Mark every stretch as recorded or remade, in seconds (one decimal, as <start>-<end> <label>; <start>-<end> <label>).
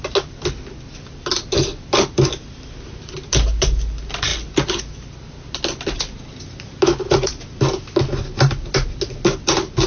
0.0-9.9 recorded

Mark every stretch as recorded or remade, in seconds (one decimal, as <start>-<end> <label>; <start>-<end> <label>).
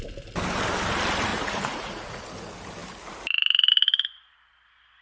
0.0-1.3 recorded; 1.3-2.2 remade; 2.2-5.0 recorded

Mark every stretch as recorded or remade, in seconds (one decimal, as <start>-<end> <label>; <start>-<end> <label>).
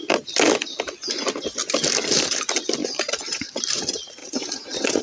0.0-2.8 recorded; 2.8-3.5 remade; 3.5-4.2 recorded; 4.2-5.0 remade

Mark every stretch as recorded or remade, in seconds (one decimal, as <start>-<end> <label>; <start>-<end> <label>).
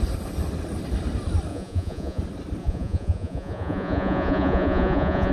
0.0-1.5 recorded; 1.5-2.2 remade; 2.2-2.6 recorded; 2.6-5.3 remade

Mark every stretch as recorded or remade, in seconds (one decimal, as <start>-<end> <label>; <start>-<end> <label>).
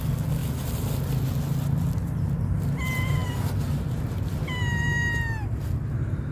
0.0-6.3 recorded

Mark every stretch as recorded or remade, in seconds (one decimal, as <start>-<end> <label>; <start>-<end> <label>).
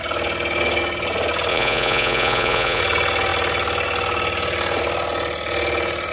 0.0-1.5 recorded; 1.5-2.8 remade; 2.8-6.1 recorded